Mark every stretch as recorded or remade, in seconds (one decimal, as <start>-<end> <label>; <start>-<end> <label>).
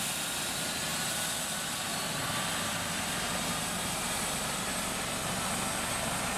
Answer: 0.0-6.4 recorded